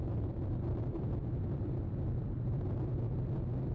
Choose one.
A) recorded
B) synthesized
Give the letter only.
B